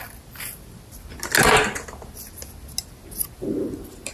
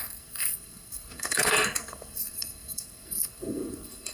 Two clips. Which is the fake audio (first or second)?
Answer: second